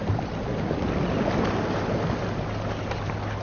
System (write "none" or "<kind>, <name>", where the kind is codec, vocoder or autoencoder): none